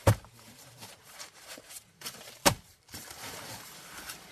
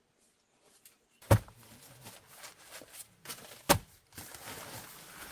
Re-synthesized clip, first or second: first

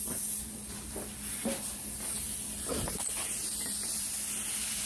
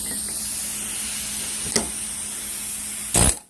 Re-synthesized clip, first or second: first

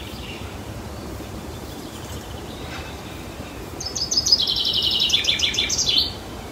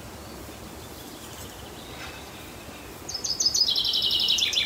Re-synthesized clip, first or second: first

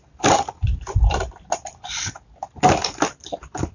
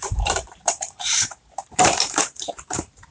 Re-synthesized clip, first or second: second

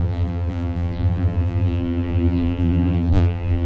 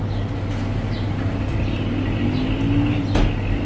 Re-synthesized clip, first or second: first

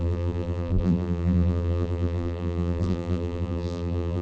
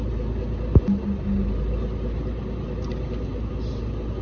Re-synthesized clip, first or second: first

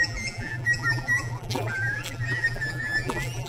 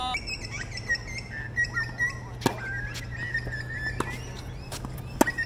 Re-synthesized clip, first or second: first